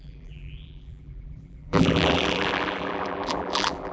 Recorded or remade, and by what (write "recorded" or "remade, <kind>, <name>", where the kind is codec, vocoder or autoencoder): remade, vocoder, BigVGAN v2